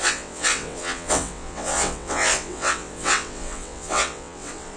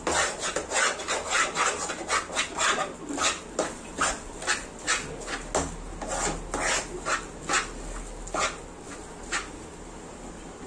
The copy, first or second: first